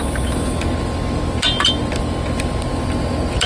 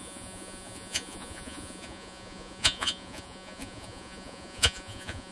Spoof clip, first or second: second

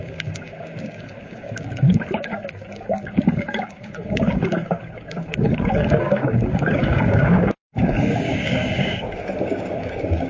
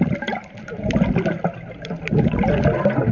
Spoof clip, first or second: first